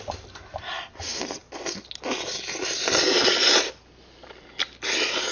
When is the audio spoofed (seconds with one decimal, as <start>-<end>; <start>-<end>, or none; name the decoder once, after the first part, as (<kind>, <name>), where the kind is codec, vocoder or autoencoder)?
none